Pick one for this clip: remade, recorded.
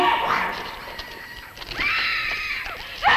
recorded